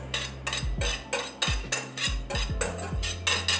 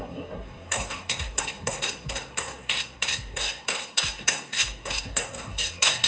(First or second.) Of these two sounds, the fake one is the second